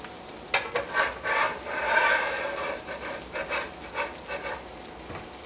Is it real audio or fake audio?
real